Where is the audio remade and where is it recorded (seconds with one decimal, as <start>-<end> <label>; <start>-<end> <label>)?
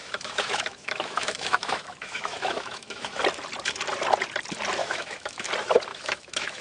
0.0-3.2 remade; 3.2-4.8 recorded; 4.8-5.5 remade; 5.5-5.9 recorded; 5.9-6.6 remade